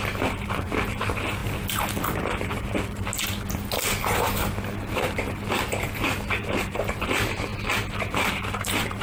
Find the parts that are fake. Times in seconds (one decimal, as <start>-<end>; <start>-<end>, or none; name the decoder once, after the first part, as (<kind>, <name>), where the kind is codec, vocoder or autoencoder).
0.0-1.4 (vocoder, BigVGAN v2); 2.0-3.1; 4.9-7.5; 8.0-9.0

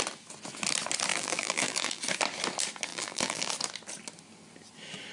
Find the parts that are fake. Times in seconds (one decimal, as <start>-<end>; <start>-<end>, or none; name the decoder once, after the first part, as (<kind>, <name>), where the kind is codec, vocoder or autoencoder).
1.1-2.0 (vocoder, BigVGAN v2); 2.9-3.5

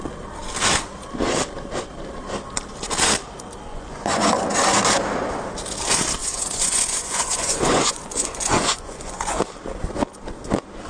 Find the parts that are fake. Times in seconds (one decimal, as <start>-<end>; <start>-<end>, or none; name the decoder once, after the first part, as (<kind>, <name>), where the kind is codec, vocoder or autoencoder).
3.7-4.3 (vocoder, Vocos); 6.2-9.4

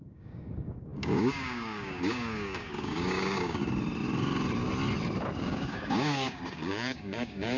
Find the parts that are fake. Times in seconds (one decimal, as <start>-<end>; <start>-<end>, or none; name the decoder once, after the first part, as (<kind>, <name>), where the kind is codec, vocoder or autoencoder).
0.0-3.6 (codec, DAC); 5.4-7.6

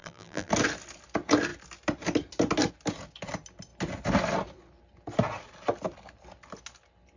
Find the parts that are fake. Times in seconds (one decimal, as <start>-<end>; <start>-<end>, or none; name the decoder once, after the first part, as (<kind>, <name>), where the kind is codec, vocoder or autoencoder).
0.0-0.5 (vocoder, BigVGAN v2)

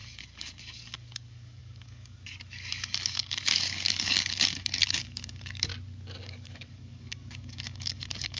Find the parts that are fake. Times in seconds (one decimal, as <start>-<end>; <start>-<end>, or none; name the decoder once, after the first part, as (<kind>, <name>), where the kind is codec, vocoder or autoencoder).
0.0-5.7 (codec, DAC); 6.2-8.4